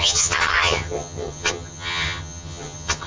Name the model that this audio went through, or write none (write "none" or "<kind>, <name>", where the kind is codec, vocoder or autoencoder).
vocoder, HiFi-GAN